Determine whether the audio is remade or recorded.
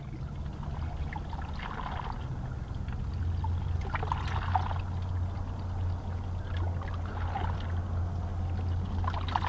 recorded